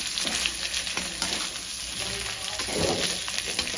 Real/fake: real